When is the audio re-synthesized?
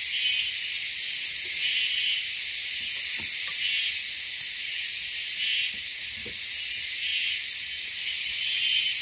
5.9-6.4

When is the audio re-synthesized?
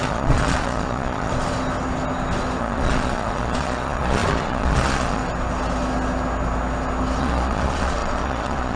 0.0-1.3; 2.6-5.2; 7.2-8.8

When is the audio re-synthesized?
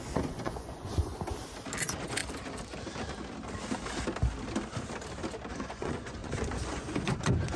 0.0-1.1; 1.8-2.2; 5.5-7.6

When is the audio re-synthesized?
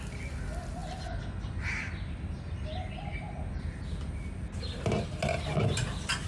none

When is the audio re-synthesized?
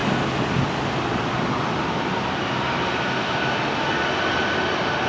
none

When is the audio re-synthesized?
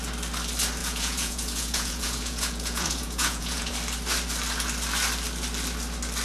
0.8-3.7